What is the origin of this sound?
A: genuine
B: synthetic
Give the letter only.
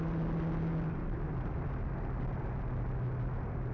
A